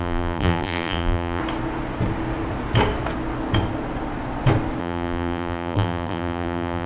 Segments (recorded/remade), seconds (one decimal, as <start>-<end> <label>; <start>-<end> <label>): 0.0-1.4 remade; 1.4-4.8 recorded; 4.8-6.9 remade